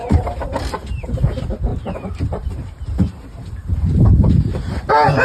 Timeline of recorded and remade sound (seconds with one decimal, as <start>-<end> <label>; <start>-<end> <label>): 0.0-1.2 remade; 1.2-1.7 recorded; 1.7-4.8 remade; 4.8-5.2 recorded